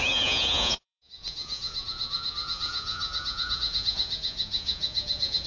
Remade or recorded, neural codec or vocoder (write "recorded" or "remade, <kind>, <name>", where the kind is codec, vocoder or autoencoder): remade, vocoder, Vocos